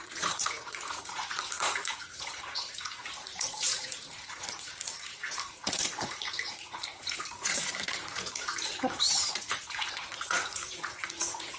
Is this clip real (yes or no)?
no